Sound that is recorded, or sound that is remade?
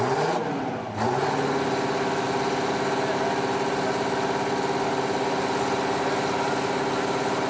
recorded